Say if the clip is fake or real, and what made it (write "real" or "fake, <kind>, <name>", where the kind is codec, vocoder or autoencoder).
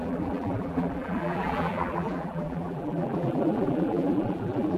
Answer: fake, vocoder, BigVGAN v2